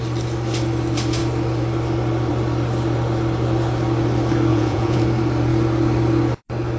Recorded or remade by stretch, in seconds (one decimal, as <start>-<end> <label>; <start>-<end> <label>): 0.0-4.5 recorded; 4.5-5.0 remade; 5.0-6.8 recorded